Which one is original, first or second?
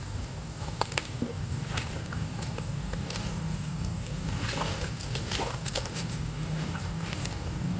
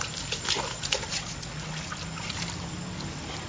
second